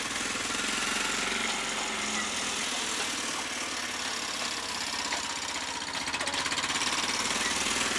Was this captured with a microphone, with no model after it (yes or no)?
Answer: yes